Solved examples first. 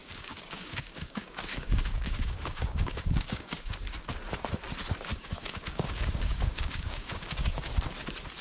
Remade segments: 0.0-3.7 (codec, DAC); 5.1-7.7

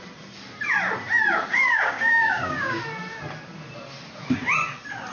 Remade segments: 1.5-2.8 (codec, DAC)